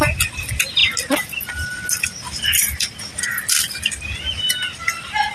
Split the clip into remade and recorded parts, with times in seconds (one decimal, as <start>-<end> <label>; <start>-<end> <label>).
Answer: 0.0-5.3 recorded